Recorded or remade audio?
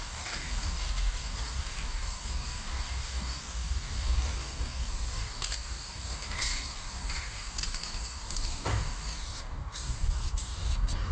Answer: remade